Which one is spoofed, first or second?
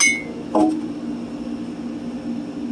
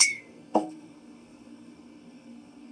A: second